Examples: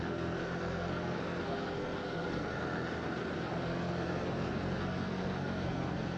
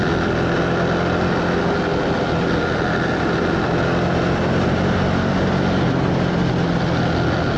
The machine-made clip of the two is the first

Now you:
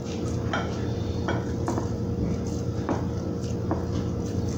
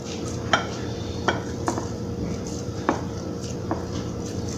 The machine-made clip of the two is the second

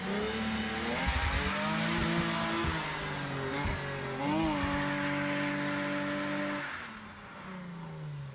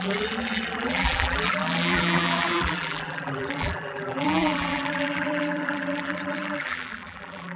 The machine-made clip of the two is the second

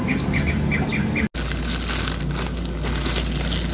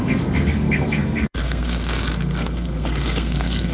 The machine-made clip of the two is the second